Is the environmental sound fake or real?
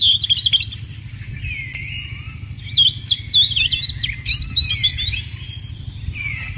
real